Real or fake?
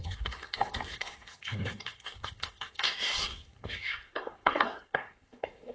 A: fake